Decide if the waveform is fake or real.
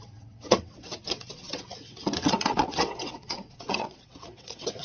fake